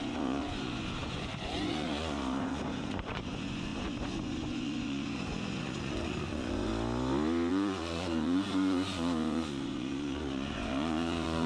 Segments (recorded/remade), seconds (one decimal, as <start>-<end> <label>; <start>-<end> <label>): 0.0-6.7 remade; 6.7-7.5 recorded; 7.5-11.5 remade